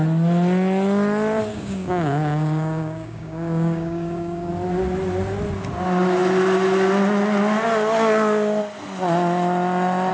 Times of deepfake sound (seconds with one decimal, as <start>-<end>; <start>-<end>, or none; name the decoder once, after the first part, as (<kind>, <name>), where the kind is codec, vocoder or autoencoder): 1.5-4.5 (codec, DAC)